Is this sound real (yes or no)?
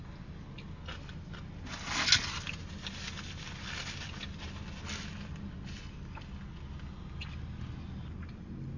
yes